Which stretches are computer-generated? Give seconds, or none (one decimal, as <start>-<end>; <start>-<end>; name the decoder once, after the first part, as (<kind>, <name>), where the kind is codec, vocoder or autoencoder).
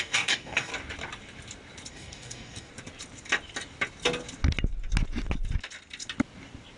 0.0-0.7 (codec, DAC); 1.9-2.7